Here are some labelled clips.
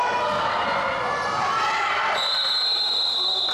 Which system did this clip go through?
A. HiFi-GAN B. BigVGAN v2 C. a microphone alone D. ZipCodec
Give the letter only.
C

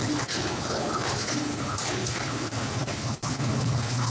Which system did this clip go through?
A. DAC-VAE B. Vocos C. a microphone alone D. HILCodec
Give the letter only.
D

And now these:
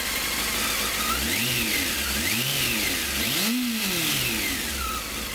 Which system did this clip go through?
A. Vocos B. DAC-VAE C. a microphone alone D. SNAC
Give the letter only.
C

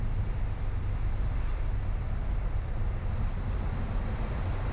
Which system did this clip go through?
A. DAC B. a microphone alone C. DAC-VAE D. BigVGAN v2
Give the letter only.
D